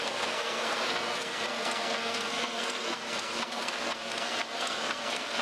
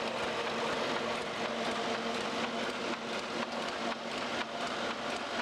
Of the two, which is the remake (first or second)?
first